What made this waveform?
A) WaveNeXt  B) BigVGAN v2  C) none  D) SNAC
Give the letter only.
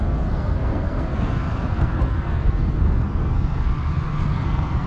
D